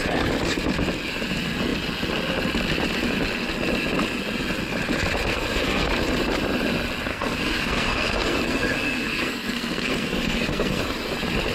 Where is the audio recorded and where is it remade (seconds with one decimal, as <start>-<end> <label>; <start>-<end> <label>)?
0.0-5.3 recorded; 5.3-5.9 remade; 5.9-7.1 recorded; 7.1-10.8 remade; 10.8-11.5 recorded